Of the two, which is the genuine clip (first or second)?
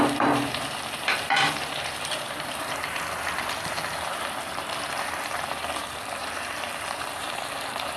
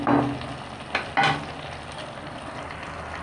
second